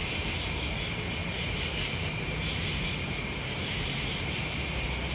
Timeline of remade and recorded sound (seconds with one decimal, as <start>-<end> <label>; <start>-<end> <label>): 0.0-1.2 recorded; 1.2-4.3 remade; 4.3-5.1 recorded